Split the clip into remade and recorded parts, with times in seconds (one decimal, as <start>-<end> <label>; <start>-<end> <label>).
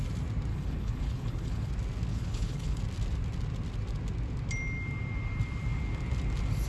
0.0-0.5 recorded; 0.5-1.7 remade; 1.7-2.1 recorded; 2.1-2.8 remade; 2.8-6.7 recorded